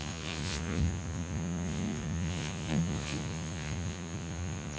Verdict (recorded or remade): remade